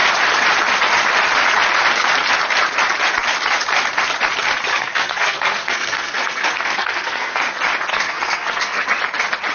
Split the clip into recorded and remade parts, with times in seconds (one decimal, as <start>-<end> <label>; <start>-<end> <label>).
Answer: 0.0-4.7 recorded; 4.7-7.4 remade; 7.4-7.9 recorded; 7.9-9.0 remade; 9.0-9.5 recorded